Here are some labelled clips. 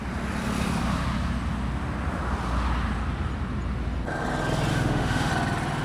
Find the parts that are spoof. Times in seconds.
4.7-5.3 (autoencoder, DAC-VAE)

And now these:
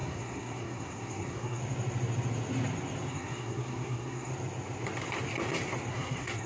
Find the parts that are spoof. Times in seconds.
0.0-1.6 (codec, SNAC); 3.1-4.3; 5.9-6.5

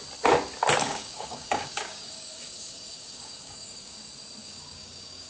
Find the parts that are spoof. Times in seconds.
0.8-4.0 (codec, DAC); 4.4-5.3

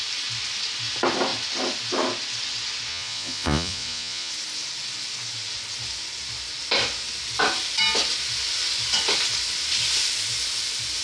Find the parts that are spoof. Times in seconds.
2.9-4.3 (vocoder, Vocos)